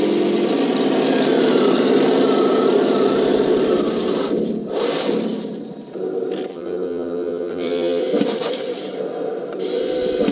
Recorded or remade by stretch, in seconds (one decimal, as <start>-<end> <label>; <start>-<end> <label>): 0.0-6.5 recorded; 6.5-8.0 remade; 8.0-10.3 recorded